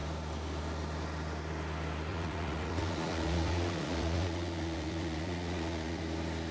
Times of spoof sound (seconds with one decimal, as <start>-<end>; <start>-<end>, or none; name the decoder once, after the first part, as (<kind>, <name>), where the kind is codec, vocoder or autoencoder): 2.1-6.0 (vocoder, Vocos)